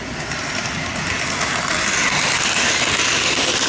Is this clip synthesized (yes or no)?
no